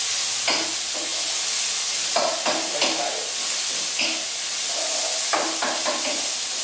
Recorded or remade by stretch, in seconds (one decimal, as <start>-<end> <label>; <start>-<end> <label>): 0.0-6.6 recorded